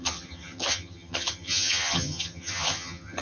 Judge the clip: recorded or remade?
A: remade